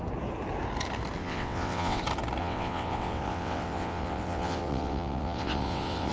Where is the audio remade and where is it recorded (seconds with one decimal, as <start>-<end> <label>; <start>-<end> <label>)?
0.0-1.2 recorded; 1.2-2.0 remade; 2.0-2.4 recorded; 2.4-6.1 remade